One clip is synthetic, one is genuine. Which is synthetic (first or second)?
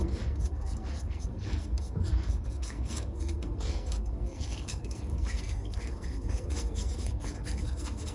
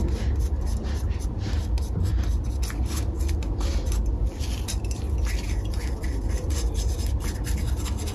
first